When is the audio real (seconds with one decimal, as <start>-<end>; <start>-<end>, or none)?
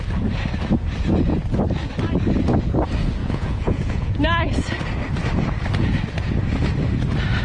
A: 0.0-3.2; 4.2-7.4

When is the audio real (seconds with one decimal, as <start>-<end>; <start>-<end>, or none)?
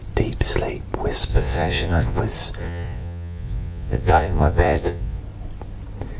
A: 0.0-1.3; 2.2-2.6; 5.2-6.2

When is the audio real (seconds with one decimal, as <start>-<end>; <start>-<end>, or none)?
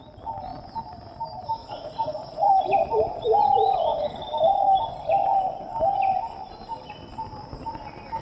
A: 0.0-1.6; 2.5-8.2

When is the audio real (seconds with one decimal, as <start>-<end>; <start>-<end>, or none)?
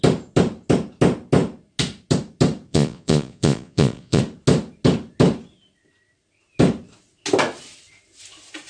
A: 0.0-2.7; 4.2-8.7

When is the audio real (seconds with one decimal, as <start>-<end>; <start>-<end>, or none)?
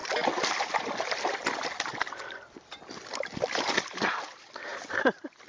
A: 0.0-5.5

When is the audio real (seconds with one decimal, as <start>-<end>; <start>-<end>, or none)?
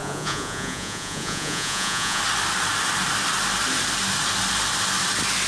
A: 2.2-5.5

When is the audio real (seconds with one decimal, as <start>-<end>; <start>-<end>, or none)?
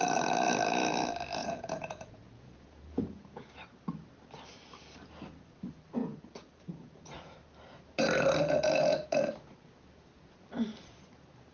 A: 0.0-1.4; 3.4-6.0; 7.4-11.5